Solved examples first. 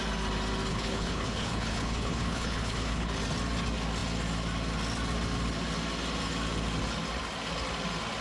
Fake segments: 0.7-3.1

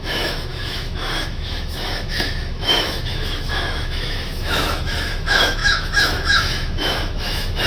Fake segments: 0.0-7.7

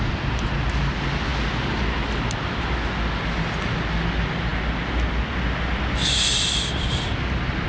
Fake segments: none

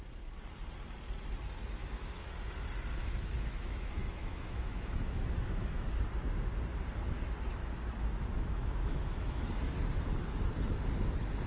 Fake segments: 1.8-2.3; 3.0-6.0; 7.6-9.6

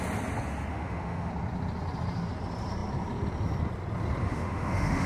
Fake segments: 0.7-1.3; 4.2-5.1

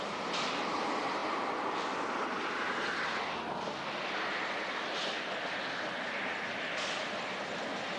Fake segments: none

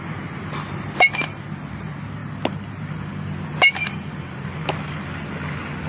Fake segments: none